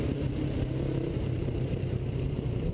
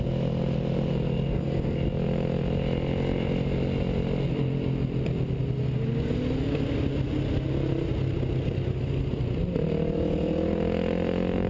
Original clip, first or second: second